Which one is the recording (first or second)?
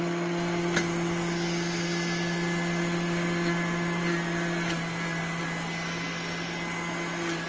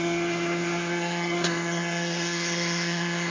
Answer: first